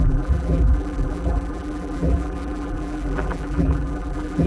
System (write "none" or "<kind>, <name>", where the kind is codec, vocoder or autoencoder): vocoder, BigVGAN v2